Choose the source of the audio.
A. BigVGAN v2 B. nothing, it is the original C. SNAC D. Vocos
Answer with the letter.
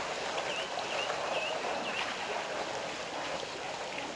B